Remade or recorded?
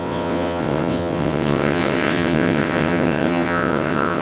remade